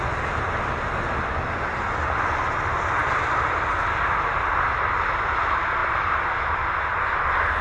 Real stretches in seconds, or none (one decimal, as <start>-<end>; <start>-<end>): 0.0-3.0; 3.8-5.8; 7.0-7.6

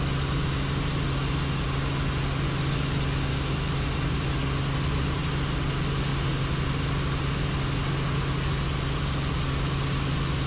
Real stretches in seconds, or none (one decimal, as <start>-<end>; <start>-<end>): 0.0-10.5